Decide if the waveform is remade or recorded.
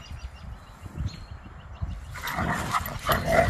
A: recorded